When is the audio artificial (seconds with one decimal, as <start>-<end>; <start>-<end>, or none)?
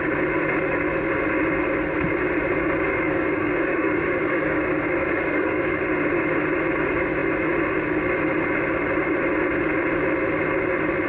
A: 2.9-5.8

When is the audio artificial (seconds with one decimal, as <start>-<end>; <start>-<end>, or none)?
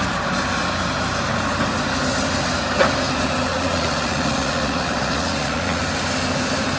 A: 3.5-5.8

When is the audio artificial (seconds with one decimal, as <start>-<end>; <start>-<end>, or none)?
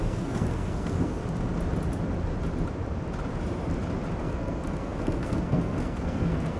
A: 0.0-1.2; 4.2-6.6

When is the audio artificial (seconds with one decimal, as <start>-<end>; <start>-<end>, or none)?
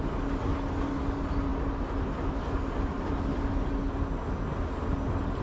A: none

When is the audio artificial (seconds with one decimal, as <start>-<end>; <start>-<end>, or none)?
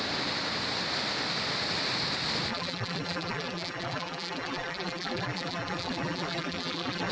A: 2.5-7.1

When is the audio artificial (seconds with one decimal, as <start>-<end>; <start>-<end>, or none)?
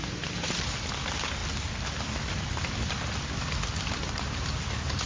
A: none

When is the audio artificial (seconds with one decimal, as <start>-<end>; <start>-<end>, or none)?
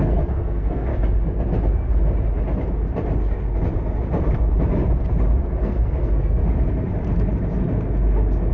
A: 0.0-0.9; 5.6-6.4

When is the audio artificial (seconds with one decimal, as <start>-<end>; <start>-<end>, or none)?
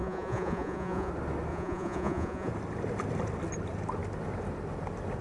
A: 0.0-1.1; 1.5-2.5